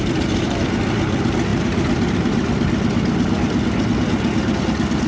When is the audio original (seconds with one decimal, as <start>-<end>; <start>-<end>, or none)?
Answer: 0.0-5.1